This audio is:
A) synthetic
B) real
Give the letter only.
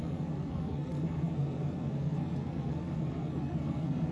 A